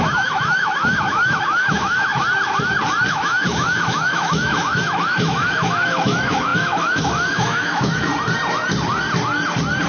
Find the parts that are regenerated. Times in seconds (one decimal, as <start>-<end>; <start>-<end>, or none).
0.0-2.1; 3.1-8.1